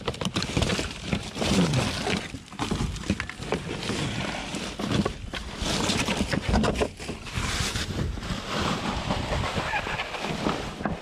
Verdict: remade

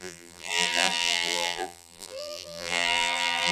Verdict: remade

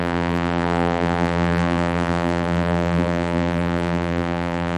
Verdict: remade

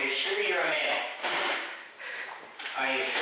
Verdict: remade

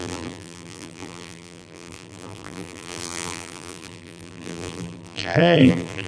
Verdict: remade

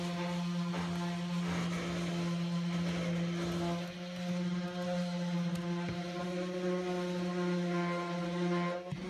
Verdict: recorded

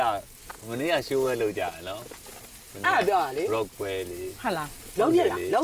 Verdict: recorded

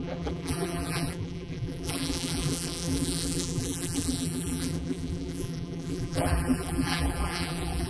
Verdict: remade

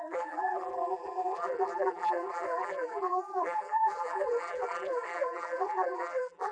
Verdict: remade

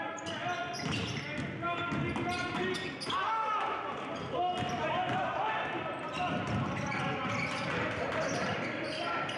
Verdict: recorded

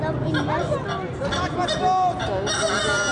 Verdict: recorded